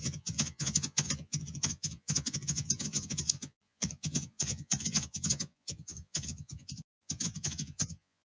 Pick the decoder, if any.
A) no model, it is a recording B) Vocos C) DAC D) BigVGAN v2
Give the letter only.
B